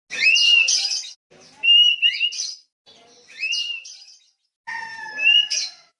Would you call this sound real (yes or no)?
yes